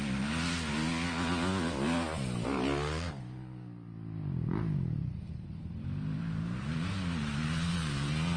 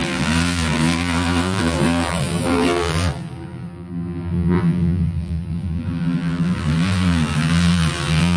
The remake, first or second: second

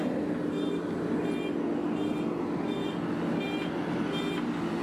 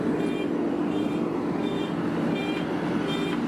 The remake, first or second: second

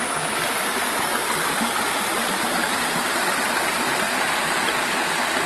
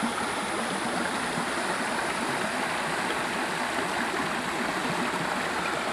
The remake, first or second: second